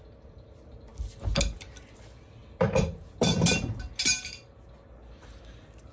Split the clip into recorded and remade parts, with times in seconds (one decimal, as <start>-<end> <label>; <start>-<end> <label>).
0.0-5.9 recorded